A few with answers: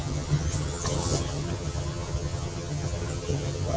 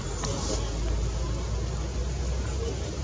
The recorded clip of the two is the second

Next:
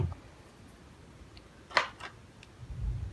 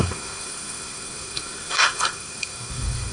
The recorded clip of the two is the first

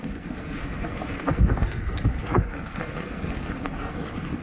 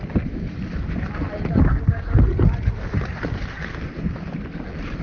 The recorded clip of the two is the second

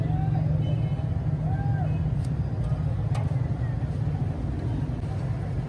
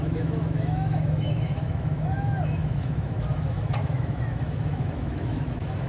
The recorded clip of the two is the first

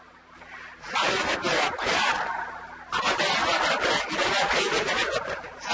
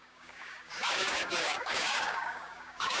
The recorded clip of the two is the first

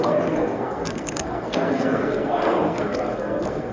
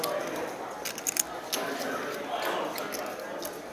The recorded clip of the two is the second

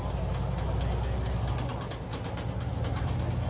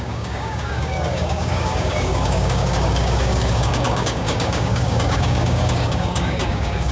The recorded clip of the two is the first